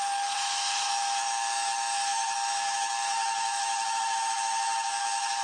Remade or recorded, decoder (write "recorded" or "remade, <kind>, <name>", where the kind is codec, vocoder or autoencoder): remade, autoencoder, DAC-VAE